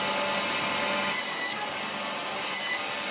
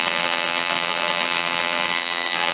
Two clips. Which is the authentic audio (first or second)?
first